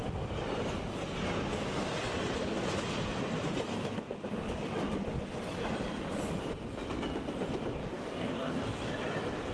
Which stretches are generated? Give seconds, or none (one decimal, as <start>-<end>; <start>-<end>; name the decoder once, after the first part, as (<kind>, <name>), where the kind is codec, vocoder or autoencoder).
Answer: 7.8-8.6 (codec, DAC)